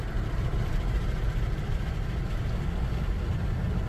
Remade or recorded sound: recorded